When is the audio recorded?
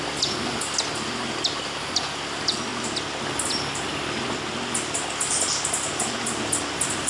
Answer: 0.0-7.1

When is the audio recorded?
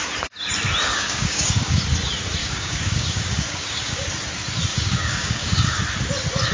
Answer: 0.0-0.9; 1.8-2.4; 4.1-4.7; 5.8-6.5